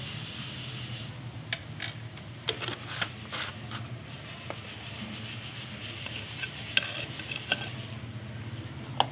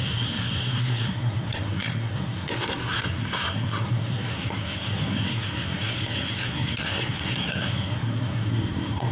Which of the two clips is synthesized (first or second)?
second